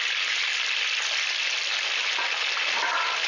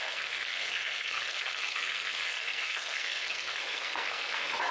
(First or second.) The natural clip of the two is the first